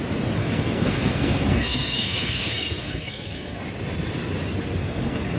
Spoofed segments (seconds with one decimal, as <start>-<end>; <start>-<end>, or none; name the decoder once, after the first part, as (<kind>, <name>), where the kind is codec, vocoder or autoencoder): 0.4-3.6 (codec, SNAC); 4.8-5.4